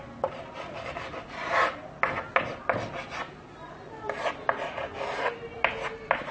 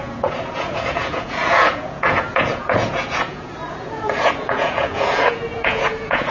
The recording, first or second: first